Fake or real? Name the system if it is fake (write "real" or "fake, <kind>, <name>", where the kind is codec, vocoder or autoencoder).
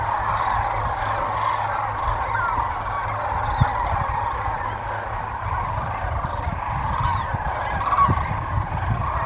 real